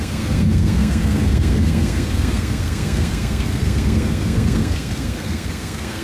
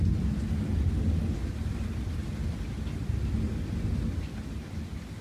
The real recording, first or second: second